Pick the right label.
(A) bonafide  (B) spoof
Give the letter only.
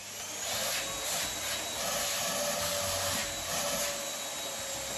A